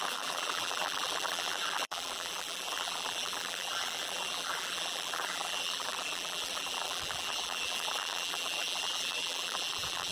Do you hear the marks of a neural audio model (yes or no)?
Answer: yes